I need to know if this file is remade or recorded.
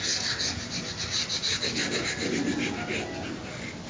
recorded